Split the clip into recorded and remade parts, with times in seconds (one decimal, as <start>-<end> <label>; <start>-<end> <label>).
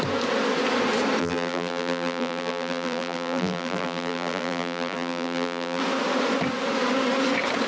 0.0-1.2 recorded; 1.2-5.8 remade; 5.8-7.7 recorded